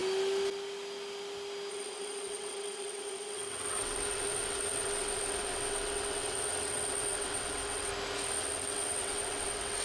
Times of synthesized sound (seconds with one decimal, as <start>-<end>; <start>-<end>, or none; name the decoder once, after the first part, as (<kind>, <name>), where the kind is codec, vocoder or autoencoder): 1.7-7.9 (vocoder, WaveNeXt); 8.4-9.8